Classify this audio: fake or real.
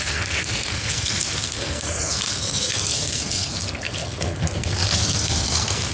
fake